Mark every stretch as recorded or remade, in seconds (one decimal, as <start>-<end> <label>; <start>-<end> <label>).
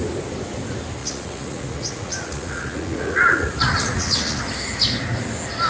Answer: 0.0-1.0 recorded; 1.0-4.4 remade; 4.4-5.7 recorded